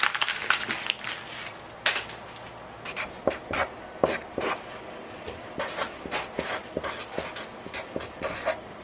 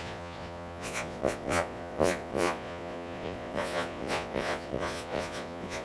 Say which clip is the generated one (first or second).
second